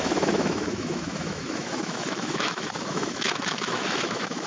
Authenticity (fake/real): fake